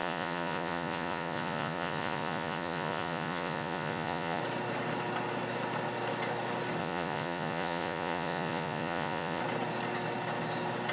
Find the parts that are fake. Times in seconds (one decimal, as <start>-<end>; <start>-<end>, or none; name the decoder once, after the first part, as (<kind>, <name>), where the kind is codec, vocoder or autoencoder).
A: 0.0-4.4 (vocoder, Vocos); 6.8-9.4